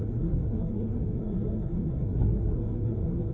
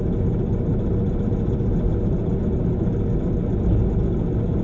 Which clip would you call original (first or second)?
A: second